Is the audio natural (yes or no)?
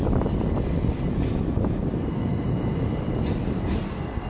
yes